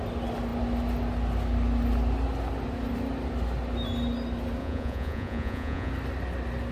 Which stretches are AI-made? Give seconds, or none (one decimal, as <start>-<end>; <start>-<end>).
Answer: 4.6-5.9